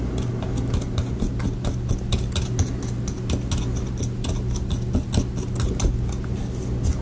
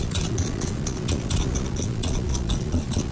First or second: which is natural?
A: first